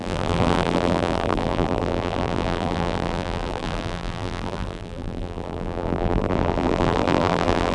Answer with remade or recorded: remade